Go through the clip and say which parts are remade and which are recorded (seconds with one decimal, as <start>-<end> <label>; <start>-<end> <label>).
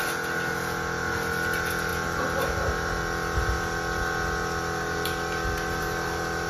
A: 0.0-6.5 recorded